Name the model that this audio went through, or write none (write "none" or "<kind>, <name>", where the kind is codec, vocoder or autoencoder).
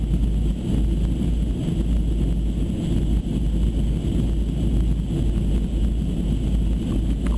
none